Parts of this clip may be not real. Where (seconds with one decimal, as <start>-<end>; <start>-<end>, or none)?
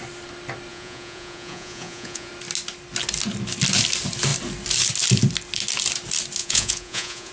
0.7-2.3; 6.4-7.3